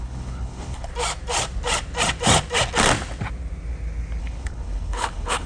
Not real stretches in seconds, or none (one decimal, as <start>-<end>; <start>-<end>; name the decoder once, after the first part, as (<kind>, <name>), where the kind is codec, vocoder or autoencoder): 0.0-0.9 (codec, HILCodec); 4.2-5.5